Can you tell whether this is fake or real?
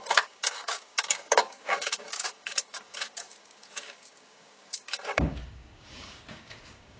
fake